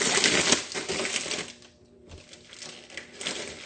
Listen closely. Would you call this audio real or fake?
real